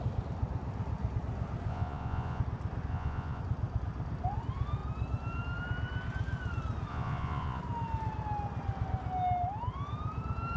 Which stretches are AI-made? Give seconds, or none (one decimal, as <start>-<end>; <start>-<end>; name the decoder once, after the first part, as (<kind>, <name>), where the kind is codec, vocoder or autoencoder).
1.7-2.4 (vocoder, Vocos); 2.9-3.4; 6.9-7.6